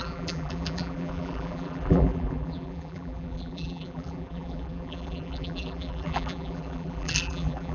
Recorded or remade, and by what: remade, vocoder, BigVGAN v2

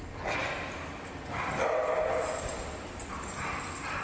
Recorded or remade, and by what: recorded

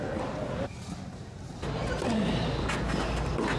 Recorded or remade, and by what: recorded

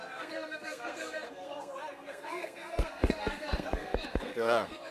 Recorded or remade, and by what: remade, codec, SNAC